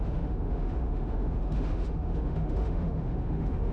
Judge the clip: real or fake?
fake